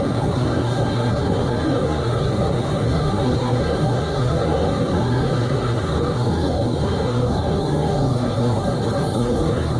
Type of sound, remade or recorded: remade